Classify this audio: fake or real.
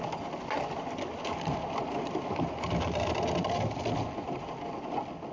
real